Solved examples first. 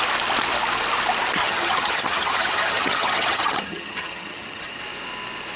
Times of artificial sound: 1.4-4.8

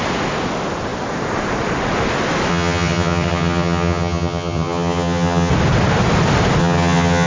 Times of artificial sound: 2.5-5.5; 6.6-7.3

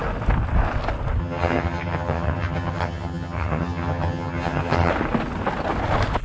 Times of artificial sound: 1.2-4.9

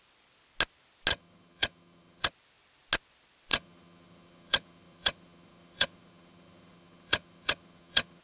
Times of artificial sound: 1.1-2.3; 3.5-8.2

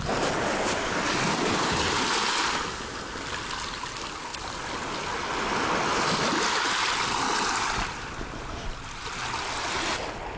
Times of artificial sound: none